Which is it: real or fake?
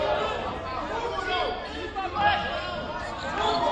real